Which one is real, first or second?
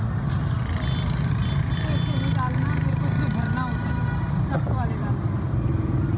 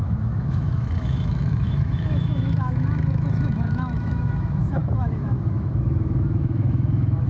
first